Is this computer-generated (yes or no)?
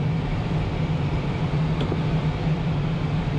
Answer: yes